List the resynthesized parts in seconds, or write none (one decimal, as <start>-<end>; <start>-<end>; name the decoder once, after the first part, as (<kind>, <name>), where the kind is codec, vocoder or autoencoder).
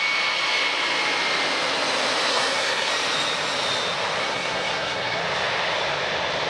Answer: 2.3-2.9 (codec, SNAC); 4.2-5.2